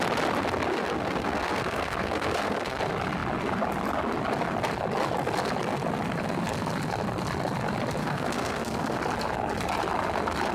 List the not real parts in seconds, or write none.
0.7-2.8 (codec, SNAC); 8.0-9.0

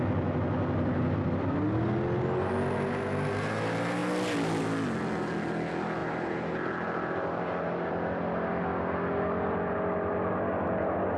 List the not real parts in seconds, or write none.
6.0-7.9 (vocoder, BigVGAN v2)

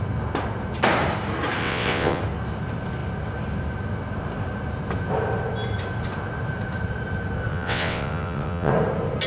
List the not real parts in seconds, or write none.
1.6-2.2 (vocoder, WaveNeXt); 7.5-8.7

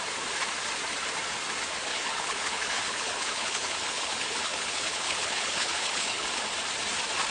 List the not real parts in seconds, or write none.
1.9-6.3 (codec, HILCodec)

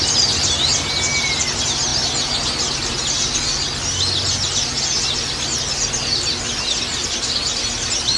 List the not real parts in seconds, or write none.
none